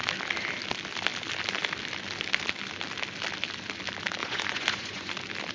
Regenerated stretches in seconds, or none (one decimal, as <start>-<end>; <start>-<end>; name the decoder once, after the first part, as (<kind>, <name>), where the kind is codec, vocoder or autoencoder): 4.2-5.1 (vocoder, Vocos)